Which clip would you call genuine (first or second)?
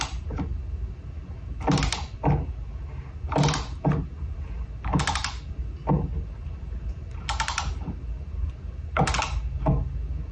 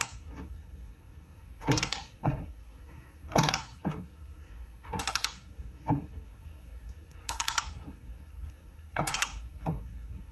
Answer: first